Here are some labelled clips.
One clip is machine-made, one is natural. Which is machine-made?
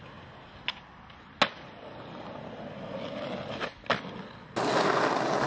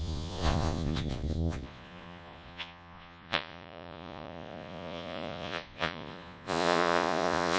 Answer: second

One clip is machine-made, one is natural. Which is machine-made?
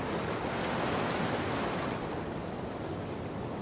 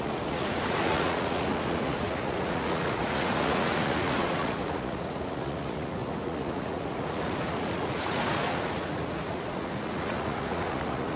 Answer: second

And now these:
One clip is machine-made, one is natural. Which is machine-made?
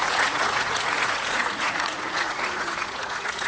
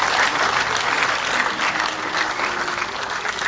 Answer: first